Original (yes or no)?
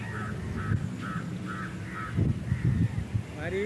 yes